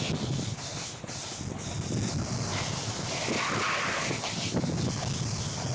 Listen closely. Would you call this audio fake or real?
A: real